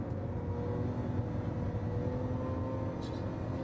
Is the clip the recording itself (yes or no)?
yes